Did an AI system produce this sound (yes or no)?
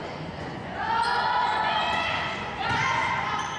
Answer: yes